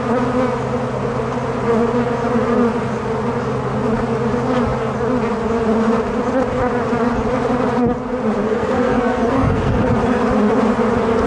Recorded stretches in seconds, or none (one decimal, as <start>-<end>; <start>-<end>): 0.0-8.4; 9.9-11.3